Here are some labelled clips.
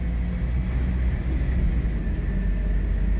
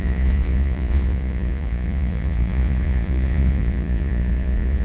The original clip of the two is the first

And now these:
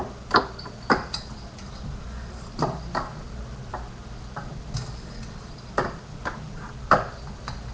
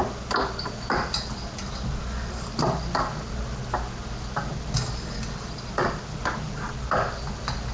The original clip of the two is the second